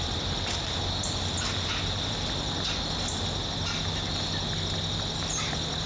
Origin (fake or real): real